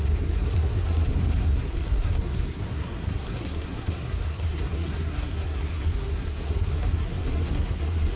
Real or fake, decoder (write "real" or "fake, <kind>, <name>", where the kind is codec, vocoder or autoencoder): fake, codec, SNAC